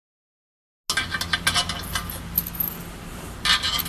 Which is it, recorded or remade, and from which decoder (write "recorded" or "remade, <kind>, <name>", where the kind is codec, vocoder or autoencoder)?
recorded